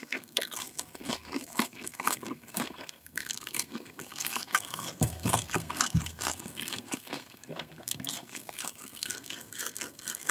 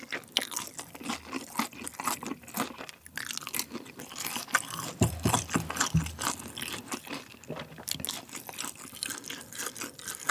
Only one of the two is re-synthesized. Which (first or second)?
first